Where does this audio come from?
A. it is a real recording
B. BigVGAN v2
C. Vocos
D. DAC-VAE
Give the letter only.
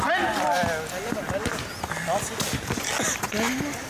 A